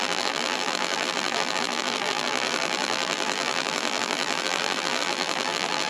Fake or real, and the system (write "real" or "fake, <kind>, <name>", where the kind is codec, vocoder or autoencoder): fake, vocoder, BigVGAN v2